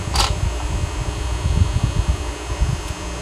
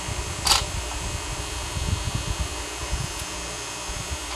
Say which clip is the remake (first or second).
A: second